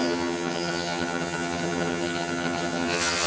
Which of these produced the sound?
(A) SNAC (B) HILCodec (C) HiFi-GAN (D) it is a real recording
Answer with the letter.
C